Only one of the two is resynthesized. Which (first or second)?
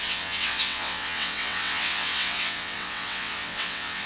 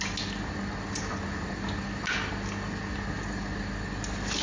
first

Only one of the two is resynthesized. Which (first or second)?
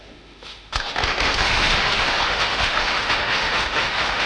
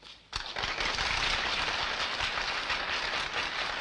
first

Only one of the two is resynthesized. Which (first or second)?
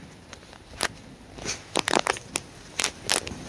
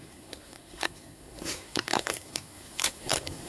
second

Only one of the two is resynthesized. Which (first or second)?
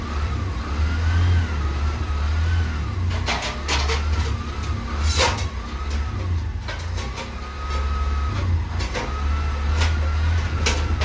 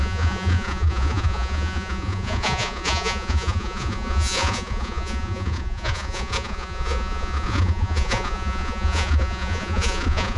second